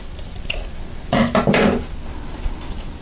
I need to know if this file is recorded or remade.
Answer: remade